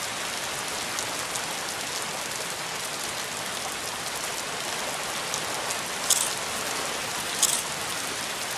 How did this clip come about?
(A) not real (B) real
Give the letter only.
B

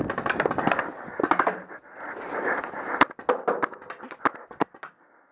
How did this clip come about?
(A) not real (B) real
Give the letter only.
B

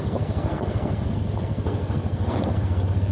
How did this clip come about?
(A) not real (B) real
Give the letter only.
A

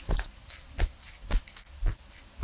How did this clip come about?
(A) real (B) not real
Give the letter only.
A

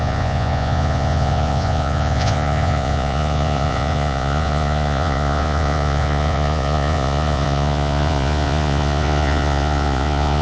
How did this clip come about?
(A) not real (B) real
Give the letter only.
A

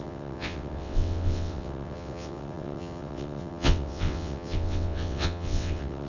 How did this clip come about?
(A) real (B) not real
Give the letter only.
B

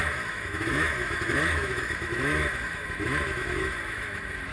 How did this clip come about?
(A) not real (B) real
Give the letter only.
A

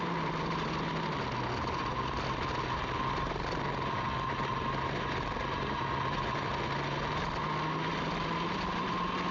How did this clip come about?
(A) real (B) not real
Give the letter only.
A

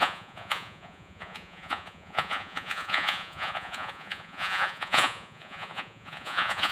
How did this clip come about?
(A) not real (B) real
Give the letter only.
A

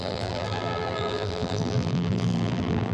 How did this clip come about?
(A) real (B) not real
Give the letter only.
B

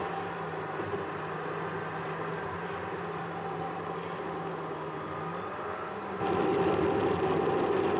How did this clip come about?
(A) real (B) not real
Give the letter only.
A